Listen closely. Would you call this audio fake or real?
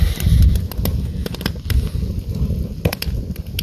real